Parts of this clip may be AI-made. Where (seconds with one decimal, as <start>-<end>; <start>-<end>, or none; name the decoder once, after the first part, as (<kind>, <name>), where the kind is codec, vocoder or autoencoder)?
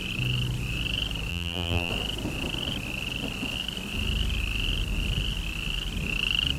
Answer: 1.3-1.9 (vocoder, BigVGAN v2)